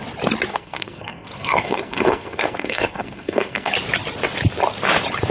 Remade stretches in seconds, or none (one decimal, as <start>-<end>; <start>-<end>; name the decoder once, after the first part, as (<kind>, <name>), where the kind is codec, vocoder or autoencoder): 0.5-3.7 (codec, SNAC)